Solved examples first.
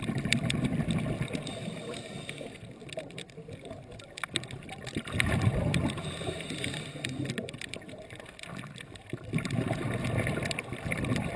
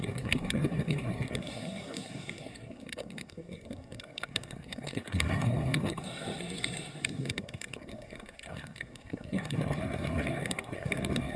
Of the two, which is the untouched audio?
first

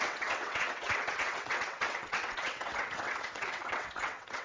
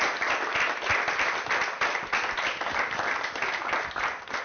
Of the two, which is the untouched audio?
second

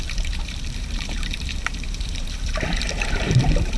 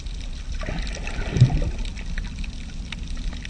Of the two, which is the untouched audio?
second